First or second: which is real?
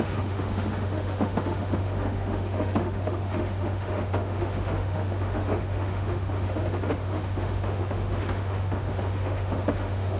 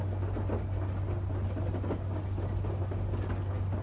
second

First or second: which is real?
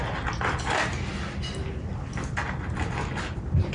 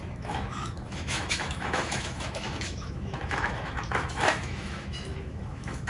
first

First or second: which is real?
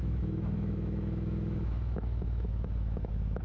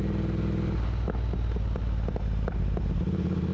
second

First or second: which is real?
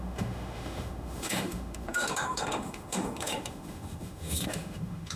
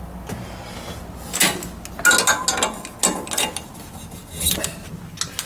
second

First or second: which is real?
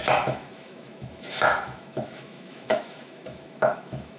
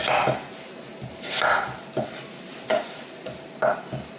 second